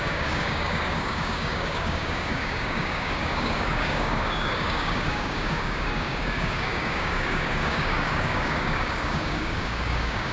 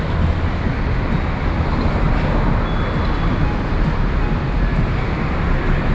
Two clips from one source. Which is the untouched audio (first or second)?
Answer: second